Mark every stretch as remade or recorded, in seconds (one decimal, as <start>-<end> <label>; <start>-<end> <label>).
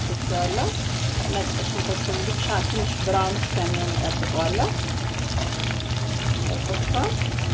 0.0-7.5 recorded